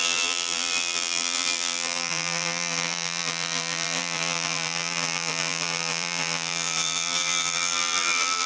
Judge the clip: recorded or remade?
remade